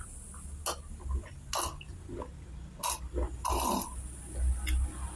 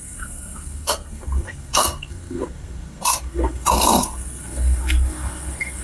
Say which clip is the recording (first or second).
first